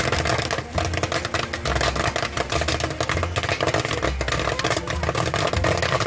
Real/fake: real